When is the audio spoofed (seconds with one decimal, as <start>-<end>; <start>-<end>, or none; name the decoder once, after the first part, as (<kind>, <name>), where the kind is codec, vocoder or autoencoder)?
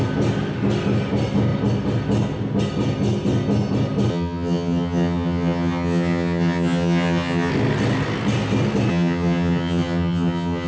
4.1-7.5 (vocoder, HiFi-GAN); 8.9-10.7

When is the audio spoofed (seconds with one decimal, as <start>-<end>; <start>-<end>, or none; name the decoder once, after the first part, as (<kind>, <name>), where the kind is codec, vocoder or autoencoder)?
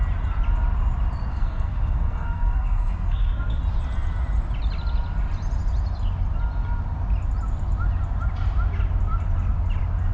1.3-3.6 (codec, SNAC)